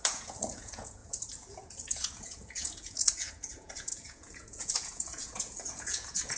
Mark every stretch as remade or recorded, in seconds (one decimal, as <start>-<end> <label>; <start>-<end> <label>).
0.0-6.4 remade